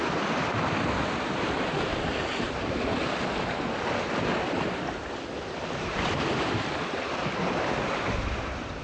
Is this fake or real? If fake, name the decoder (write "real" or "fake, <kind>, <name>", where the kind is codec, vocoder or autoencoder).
real